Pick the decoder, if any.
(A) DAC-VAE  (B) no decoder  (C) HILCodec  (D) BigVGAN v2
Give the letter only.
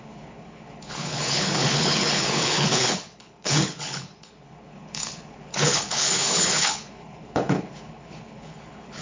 C